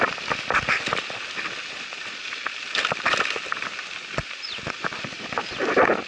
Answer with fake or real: real